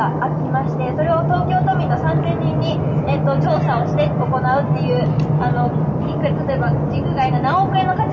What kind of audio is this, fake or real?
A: real